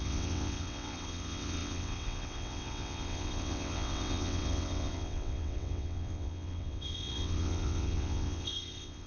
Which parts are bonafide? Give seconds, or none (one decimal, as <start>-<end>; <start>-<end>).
none